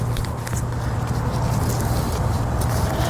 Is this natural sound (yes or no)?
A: yes